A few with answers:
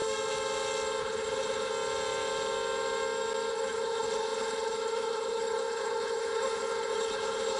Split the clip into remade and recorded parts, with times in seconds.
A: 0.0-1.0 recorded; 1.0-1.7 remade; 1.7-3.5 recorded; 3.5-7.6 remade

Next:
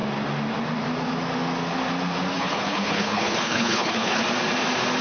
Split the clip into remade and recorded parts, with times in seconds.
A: 0.0-2.3 recorded; 2.3-4.2 remade; 4.2-5.0 recorded

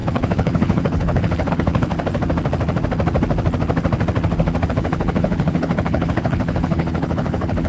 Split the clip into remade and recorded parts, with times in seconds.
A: 0.0-1.9 remade; 1.9-4.7 recorded; 4.7-7.7 remade

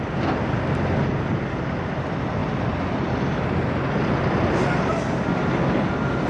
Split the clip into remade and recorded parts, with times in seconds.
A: 0.0-6.3 recorded

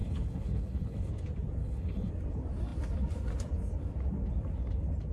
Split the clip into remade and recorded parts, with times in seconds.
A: 0.0-1.1 remade; 1.1-1.6 recorded; 1.6-2.1 remade; 2.1-5.1 recorded